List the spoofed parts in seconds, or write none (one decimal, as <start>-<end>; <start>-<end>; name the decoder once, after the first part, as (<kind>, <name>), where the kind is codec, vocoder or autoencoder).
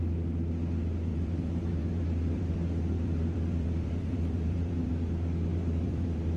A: 1.1-4.9 (vocoder, BigVGAN v2); 5.5-6.4